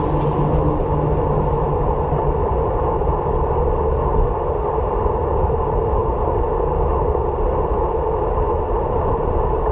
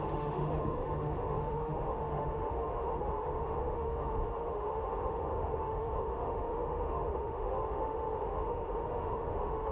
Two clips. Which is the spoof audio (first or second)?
second